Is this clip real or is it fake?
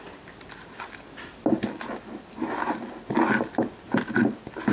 real